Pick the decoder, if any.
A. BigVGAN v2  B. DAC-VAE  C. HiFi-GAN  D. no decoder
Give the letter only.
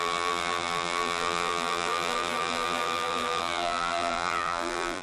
A